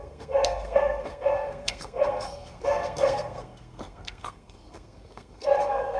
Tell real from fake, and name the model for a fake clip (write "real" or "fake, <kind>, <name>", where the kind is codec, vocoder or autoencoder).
fake, codec, SNAC